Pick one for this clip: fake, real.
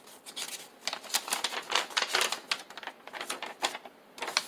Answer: real